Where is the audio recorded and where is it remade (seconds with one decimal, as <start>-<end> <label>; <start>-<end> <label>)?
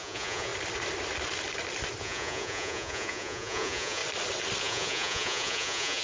0.0-0.5 remade; 0.5-2.0 recorded; 2.0-4.0 remade; 4.0-4.6 recorded; 4.6-6.0 remade